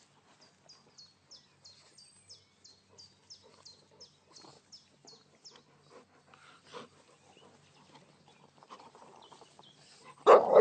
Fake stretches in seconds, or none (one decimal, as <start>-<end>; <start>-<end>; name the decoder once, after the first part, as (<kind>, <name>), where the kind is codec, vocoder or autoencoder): none

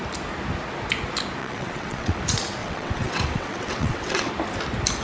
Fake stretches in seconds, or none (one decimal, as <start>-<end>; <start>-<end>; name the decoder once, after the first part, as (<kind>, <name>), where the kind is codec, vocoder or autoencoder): 1.4-2.2 (vocoder, WaveNeXt); 2.6-4.3

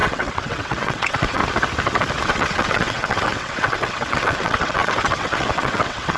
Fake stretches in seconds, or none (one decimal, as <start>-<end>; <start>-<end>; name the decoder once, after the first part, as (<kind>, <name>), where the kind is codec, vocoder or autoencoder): 0.0-1.4 (vocoder, WaveNeXt); 2.2-6.2

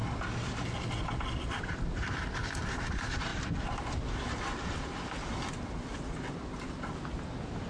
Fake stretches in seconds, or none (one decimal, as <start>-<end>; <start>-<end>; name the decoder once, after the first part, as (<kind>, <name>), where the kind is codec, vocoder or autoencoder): none